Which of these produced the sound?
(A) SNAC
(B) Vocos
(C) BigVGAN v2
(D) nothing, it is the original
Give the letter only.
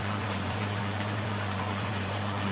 B